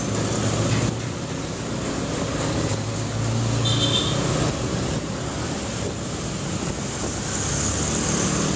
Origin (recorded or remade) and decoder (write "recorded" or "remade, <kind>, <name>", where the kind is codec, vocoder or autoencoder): recorded